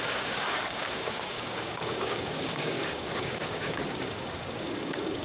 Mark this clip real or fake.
fake